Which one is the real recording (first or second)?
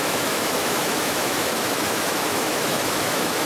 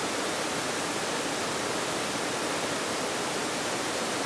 second